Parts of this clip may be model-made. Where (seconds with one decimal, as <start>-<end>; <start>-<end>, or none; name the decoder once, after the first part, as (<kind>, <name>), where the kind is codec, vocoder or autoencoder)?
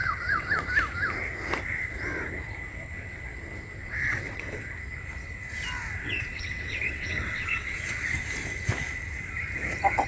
0.0-0.5 (vocoder, WaveNeXt); 2.7-3.2; 3.8-4.7; 6.0-7.9